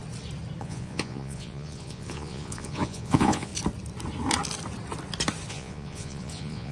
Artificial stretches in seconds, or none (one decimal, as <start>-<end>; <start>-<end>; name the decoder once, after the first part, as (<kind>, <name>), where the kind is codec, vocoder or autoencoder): 0.6-3.5 (vocoder, Vocos); 5.5-6.7